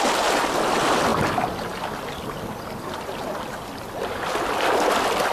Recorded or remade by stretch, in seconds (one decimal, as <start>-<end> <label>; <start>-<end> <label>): 0.0-5.3 recorded